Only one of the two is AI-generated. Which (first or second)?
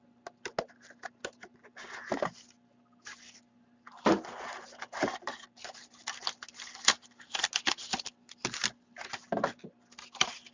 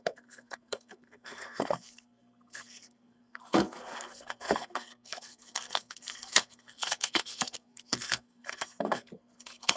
second